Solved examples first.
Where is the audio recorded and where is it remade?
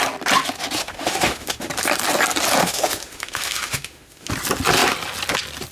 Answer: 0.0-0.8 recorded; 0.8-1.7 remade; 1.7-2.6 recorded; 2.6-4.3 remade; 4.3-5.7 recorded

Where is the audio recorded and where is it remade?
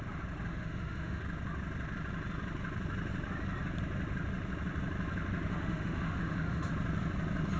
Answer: 0.0-0.5 recorded; 0.5-1.2 remade; 1.2-5.5 recorded; 5.5-6.7 remade; 6.7-7.6 recorded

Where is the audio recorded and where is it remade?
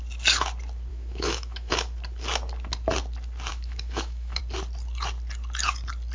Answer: 0.0-0.9 recorded; 0.9-1.7 remade; 1.7-3.5 recorded; 3.5-4.4 remade; 4.4-6.1 recorded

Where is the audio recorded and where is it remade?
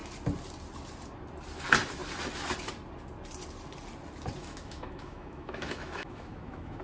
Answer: 0.0-4.4 recorded; 4.4-6.8 remade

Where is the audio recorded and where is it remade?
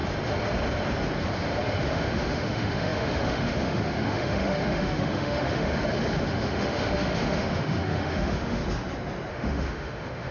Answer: 0.0-1.9 recorded; 1.9-5.7 remade; 5.7-6.3 recorded; 6.3-8.6 remade; 8.6-9.3 recorded; 9.3-10.3 remade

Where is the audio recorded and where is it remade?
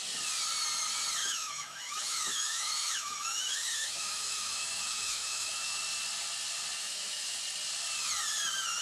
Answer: 0.0-1.2 recorded; 1.2-5.8 remade; 5.8-6.8 recorded; 6.8-7.4 remade; 7.4-8.8 recorded